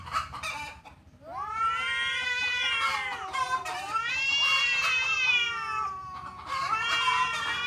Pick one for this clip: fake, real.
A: fake